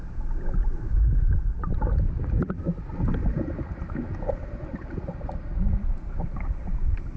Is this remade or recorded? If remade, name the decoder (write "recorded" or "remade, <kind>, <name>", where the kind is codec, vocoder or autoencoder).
recorded